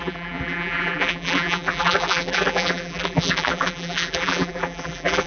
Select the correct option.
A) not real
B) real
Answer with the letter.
A